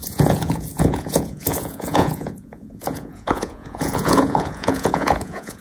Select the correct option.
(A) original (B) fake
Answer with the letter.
B